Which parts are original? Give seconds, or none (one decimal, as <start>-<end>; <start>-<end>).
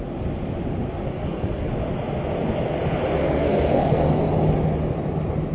0.0-1.0; 1.7-3.2; 4.2-5.5